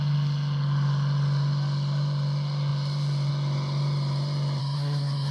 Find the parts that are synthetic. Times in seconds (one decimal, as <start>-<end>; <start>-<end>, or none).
4.6-5.3